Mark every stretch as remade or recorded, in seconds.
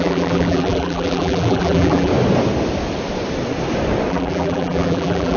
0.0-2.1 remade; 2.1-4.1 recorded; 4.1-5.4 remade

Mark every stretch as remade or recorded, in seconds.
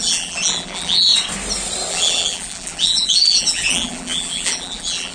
0.0-1.1 remade; 1.1-1.9 recorded; 1.9-5.1 remade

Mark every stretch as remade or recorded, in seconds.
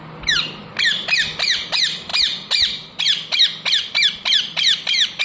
0.0-3.8 recorded; 3.8-5.2 remade